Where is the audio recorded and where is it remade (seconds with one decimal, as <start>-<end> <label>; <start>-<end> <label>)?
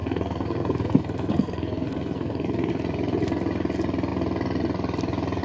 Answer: 0.0-2.7 remade; 2.7-5.4 recorded